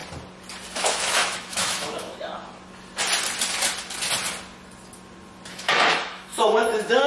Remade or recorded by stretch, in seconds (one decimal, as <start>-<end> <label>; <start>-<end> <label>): 0.0-0.7 recorded; 0.7-2.3 remade; 2.3-5.5 recorded; 5.5-7.1 remade